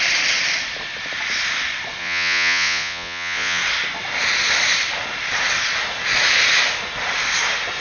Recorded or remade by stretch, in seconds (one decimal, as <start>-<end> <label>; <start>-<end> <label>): 0.0-2.0 recorded; 2.0-3.6 remade; 3.6-7.8 recorded